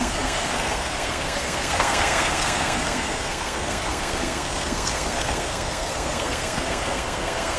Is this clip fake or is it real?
fake